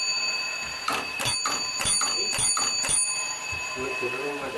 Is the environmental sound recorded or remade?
remade